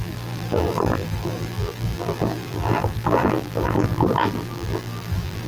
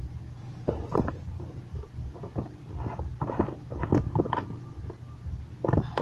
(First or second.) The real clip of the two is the second